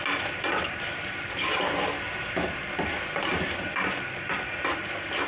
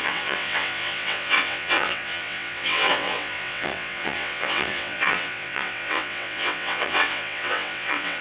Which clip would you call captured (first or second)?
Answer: first